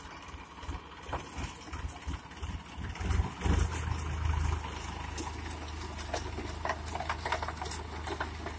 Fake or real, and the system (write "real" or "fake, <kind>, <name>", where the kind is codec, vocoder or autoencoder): real